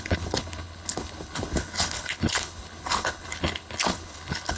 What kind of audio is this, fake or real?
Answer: fake